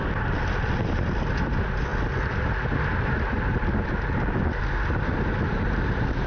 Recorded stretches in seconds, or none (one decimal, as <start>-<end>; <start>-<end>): 0.0-6.3